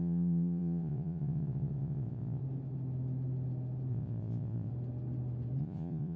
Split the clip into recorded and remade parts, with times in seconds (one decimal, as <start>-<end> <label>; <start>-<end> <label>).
0.0-2.4 remade; 2.4-3.9 recorded; 3.9-4.7 remade; 4.7-5.6 recorded; 5.6-6.2 remade